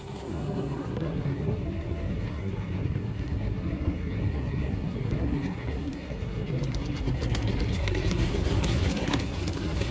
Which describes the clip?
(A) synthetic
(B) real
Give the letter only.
A